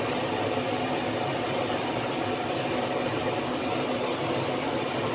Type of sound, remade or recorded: recorded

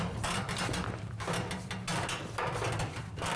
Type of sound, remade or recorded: recorded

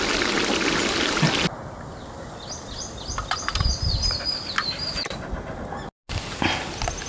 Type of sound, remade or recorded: recorded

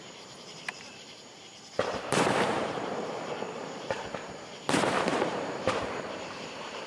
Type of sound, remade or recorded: remade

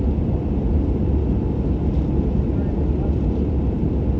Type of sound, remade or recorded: recorded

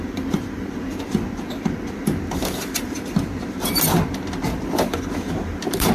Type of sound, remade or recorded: remade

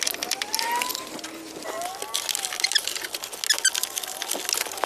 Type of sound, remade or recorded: recorded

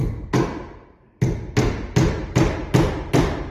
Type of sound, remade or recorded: recorded